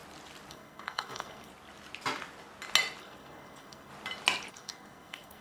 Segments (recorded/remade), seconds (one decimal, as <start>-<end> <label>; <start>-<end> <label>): 0.0-0.5 recorded; 0.5-1.5 remade; 1.5-3.0 recorded; 3.0-3.9 remade; 3.9-4.5 recorded; 4.5-5.4 remade